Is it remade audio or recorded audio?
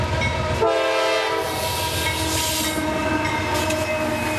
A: recorded